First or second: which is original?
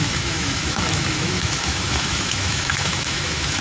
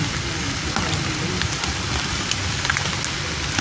second